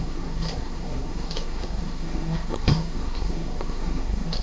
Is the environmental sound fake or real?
fake